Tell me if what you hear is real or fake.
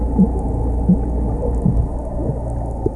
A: real